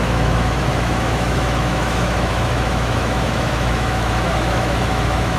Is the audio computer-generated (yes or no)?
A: yes